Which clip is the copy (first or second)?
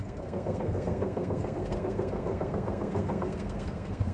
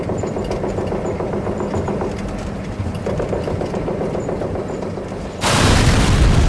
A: first